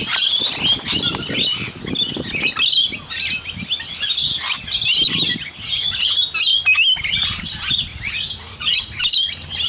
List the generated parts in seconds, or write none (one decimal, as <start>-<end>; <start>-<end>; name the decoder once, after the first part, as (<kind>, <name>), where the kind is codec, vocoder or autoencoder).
7.9-9.0 (vocoder, Vocos)